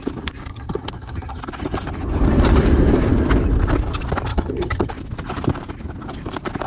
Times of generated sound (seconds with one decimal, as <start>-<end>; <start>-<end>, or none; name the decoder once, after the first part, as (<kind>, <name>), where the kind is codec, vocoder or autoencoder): 0.5-1.4 (vocoder, HiFi-GAN); 4.3-4.9